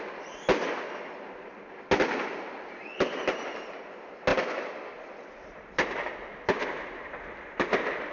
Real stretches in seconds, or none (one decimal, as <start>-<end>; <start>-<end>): 0.0-4.3; 6.1-8.1